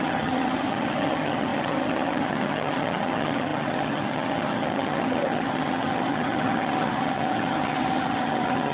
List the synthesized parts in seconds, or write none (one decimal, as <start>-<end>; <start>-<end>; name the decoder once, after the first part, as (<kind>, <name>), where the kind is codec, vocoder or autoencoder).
0.0-8.7 (vocoder, HiFi-GAN)